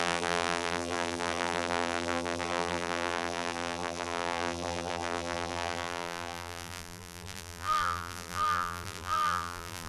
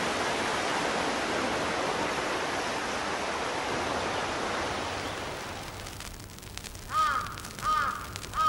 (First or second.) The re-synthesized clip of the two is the first